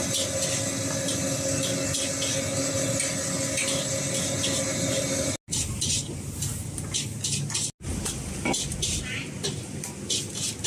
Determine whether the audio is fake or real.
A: real